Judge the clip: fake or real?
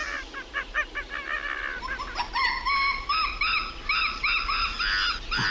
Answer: real